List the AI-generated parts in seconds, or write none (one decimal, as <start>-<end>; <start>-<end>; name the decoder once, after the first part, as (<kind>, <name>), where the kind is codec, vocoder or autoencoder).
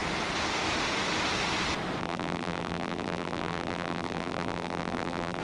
2.0-5.4 (vocoder, BigVGAN v2)